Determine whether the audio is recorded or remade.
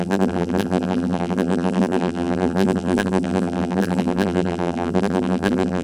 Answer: remade